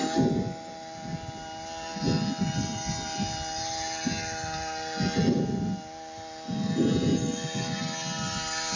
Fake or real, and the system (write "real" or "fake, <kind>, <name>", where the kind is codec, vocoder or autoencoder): real